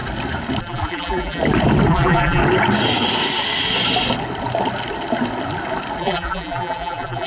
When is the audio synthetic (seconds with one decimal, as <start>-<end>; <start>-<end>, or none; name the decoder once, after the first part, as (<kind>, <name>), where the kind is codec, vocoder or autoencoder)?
0.6-1.4 (vocoder, BigVGAN v2); 1.9-2.4; 6.0-7.3